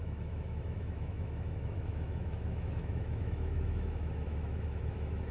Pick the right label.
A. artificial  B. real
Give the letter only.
A